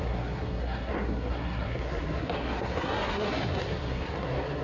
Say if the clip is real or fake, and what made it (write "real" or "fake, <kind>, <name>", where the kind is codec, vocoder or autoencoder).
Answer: fake, codec, SNAC